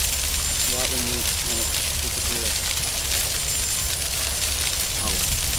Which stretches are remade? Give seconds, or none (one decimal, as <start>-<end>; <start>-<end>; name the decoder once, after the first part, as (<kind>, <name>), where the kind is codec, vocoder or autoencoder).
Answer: none